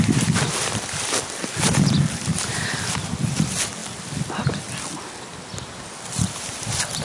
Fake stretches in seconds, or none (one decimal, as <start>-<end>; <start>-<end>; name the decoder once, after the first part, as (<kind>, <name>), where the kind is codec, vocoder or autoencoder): none